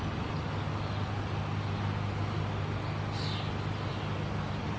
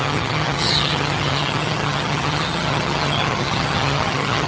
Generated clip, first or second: second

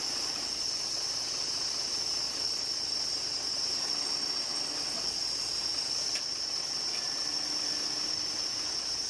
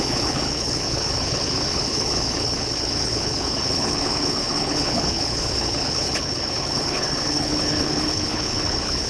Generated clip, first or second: second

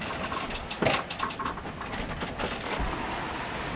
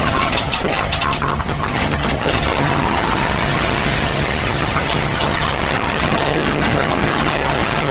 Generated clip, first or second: second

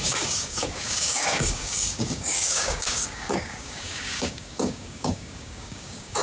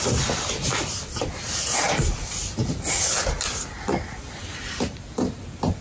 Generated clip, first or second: first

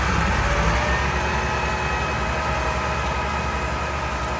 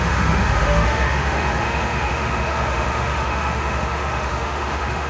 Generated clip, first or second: second